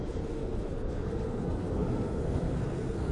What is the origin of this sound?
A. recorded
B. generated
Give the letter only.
B